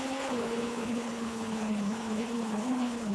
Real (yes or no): no